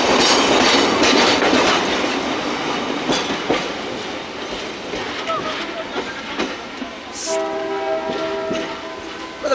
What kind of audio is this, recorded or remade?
recorded